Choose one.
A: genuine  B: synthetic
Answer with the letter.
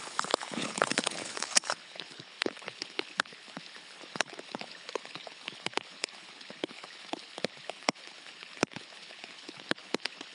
B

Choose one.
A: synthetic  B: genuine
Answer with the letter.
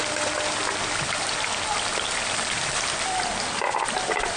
B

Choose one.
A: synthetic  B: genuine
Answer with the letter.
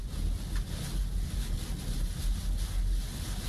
B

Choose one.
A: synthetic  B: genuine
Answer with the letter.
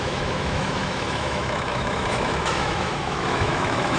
A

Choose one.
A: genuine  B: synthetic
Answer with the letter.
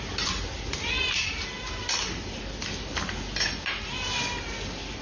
A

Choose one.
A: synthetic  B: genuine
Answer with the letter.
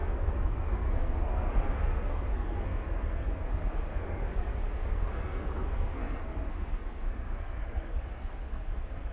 A